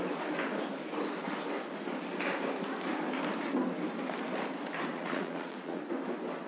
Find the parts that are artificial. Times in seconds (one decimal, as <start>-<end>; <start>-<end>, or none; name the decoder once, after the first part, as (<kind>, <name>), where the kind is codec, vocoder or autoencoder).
4.9-5.8 (vocoder, Vocos)